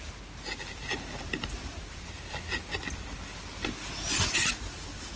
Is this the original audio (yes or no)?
yes